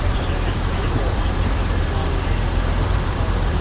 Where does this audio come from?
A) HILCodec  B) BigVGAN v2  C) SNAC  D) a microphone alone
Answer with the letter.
B